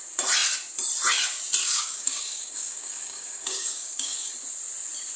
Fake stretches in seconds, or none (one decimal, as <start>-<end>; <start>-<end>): 1.6-4.3